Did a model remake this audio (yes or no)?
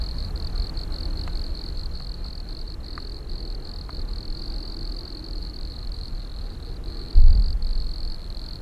no